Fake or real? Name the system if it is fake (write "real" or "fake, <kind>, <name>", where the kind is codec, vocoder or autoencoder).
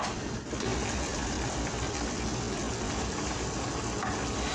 real